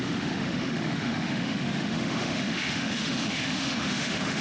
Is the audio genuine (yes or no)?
no